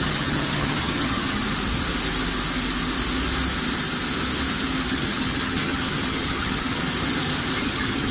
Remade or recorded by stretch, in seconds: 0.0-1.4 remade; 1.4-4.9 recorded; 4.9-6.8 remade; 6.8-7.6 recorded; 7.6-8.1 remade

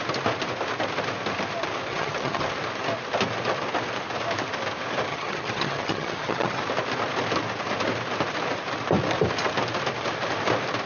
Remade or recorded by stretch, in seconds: 0.0-1.9 recorded; 1.9-2.4 remade; 2.4-5.1 recorded; 5.1-6.6 remade; 6.6-10.9 recorded